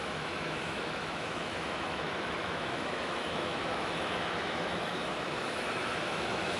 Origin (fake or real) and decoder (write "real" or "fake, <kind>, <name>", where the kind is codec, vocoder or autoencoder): fake, autoencoder, DAC-VAE